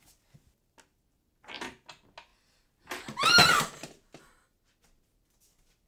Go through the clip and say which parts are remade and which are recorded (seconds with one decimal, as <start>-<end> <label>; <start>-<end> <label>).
0.0-5.9 recorded